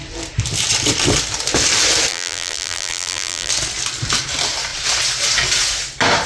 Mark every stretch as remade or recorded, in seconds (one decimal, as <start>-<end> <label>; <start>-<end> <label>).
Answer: 0.0-2.1 recorded; 2.1-3.5 remade; 3.5-6.3 recorded